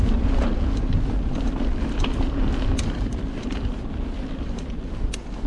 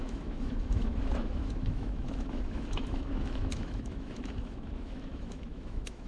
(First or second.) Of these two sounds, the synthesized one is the second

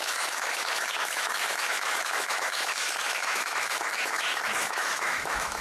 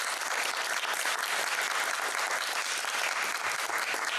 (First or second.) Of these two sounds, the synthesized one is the first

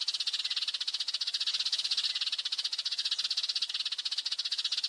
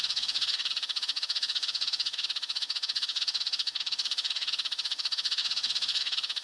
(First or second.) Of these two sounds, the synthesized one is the second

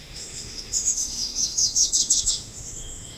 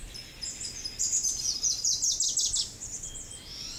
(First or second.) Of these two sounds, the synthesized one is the first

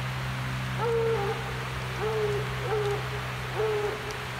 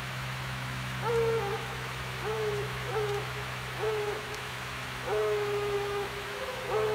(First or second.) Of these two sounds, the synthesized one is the second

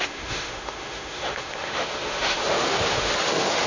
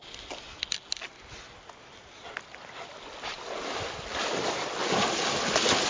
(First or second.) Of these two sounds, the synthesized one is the first